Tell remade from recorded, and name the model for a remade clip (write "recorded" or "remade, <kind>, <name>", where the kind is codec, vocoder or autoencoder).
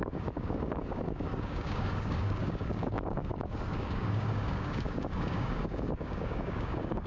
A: remade, codec, DAC